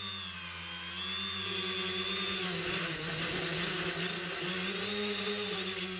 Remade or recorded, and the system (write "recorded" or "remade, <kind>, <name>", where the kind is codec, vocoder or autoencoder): recorded